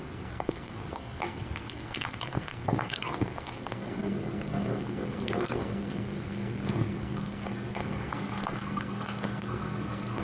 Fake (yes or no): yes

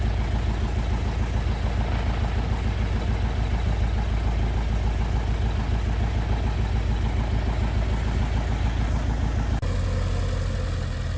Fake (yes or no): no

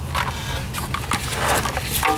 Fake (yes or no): no